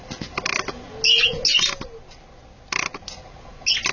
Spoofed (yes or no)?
no